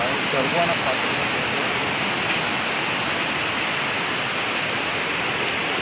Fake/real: real